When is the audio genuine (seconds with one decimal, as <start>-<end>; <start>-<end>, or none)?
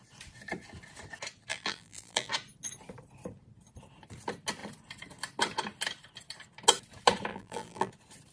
0.0-1.5; 2.3-7.3; 7.9-8.3